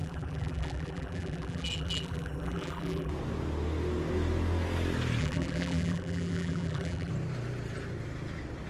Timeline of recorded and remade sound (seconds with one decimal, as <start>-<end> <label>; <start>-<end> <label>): 0.0-3.1 remade; 3.1-5.2 recorded; 5.2-7.1 remade; 7.1-8.7 recorded